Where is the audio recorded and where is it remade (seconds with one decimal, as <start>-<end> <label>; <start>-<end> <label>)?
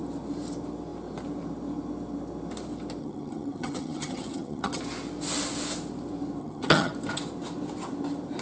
0.0-3.0 recorded; 3.0-4.8 remade; 4.8-6.4 recorded; 6.4-6.9 remade; 6.9-8.4 recorded